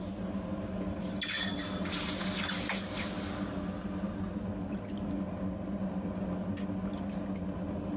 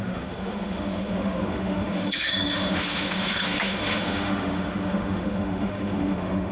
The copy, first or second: second